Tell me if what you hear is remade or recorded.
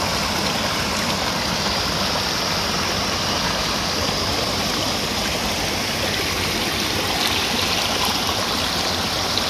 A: recorded